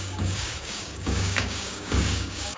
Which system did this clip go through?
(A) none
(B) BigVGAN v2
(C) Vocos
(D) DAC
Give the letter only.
D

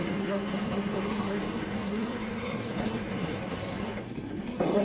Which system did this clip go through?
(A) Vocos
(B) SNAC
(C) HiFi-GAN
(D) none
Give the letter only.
B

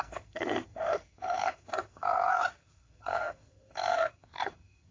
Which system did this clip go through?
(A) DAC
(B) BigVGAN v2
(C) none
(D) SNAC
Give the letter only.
D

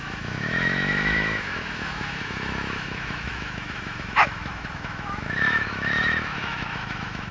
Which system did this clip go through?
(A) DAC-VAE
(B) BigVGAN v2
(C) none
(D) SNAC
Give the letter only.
A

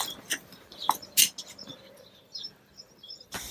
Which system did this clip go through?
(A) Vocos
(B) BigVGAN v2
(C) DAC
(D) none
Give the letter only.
D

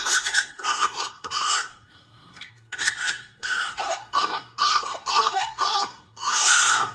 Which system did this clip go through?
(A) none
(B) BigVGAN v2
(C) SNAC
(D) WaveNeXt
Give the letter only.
C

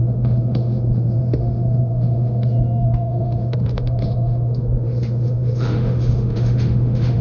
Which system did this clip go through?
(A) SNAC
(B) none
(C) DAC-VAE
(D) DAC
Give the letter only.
C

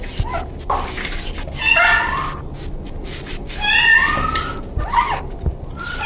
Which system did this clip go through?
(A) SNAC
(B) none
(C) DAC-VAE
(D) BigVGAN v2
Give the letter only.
B